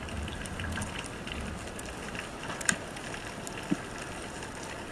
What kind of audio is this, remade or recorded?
remade